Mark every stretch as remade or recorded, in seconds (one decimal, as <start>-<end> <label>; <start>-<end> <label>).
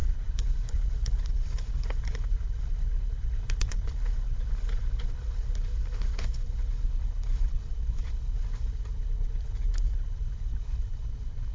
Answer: 0.0-11.5 remade